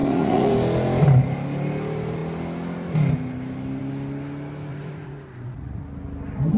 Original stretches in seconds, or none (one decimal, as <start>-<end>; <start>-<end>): 0.5-4.7; 5.8-6.6